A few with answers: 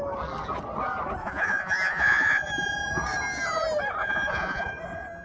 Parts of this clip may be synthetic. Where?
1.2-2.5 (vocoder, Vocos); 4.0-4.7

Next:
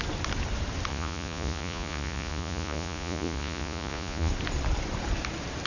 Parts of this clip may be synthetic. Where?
0.9-4.3 (vocoder, Vocos)